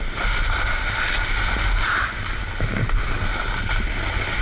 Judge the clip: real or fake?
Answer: real